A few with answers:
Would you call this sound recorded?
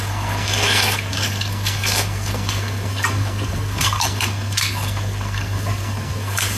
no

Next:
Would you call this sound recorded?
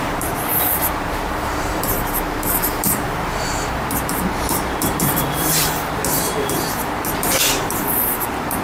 no